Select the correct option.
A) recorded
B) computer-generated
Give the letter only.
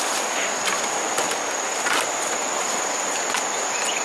A